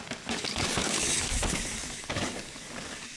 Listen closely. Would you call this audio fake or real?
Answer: fake